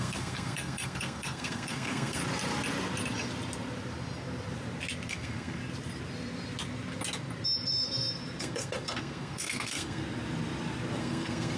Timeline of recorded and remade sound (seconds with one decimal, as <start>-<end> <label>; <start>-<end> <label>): 0.0-2.2 remade; 2.2-5.1 recorded; 5.1-5.6 remade; 5.6-8.4 recorded; 8.4-10.0 remade; 10.0-11.0 recorded; 11.0-11.6 remade